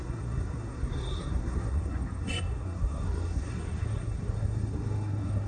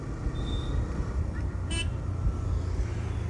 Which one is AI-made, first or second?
first